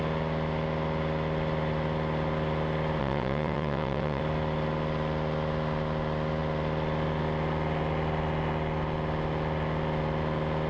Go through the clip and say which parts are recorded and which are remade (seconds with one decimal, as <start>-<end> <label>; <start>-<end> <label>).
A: 0.0-3.0 recorded; 3.0-4.2 remade; 4.2-10.7 recorded